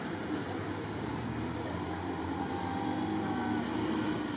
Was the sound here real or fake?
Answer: fake